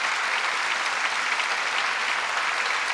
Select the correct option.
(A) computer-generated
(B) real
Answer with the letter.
B